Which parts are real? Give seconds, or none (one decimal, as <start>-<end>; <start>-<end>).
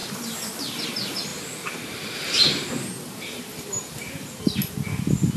0.0-1.3; 4.4-5.4